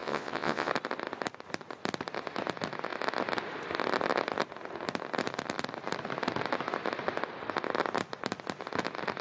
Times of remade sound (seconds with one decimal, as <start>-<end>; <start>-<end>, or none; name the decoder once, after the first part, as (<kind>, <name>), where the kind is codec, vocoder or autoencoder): 0.0-0.7 (vocoder, WaveNeXt)